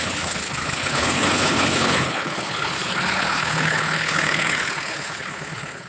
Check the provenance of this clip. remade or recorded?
remade